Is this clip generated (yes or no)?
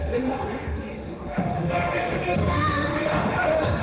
yes